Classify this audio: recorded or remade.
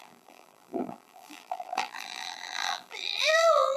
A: remade